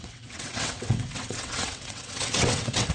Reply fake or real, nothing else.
fake